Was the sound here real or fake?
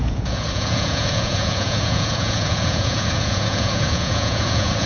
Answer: fake